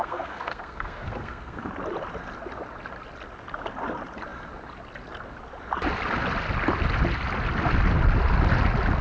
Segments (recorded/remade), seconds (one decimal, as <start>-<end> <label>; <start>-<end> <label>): 0.0-1.7 remade; 1.7-9.0 recorded